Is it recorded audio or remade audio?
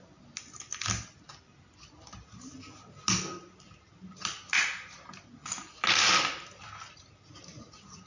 recorded